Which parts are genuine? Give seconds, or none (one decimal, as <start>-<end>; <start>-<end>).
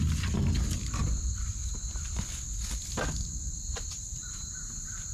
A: 0.0-5.1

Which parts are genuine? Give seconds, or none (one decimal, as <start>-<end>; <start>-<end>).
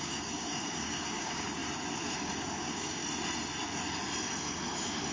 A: 1.6-2.6; 3.0-5.1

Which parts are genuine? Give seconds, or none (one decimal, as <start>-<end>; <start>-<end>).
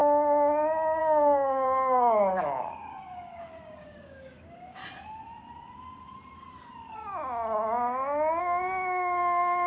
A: 0.0-1.0; 4.8-8.4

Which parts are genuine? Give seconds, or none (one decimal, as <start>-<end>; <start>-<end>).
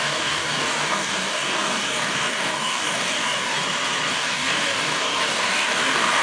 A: 3.6-4.1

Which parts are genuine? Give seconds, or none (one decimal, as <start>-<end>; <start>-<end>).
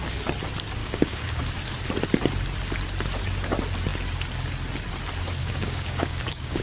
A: 0.0-0.8; 1.4-5.4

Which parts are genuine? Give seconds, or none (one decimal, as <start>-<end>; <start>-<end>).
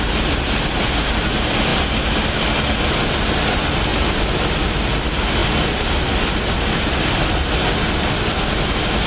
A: 0.0-9.1